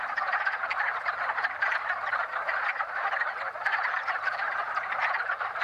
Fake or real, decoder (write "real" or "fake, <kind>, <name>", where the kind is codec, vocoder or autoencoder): real